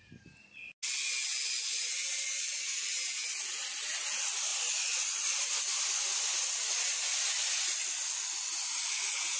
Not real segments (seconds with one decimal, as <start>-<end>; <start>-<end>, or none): none